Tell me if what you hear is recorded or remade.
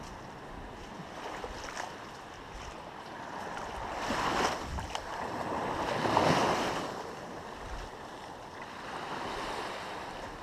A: recorded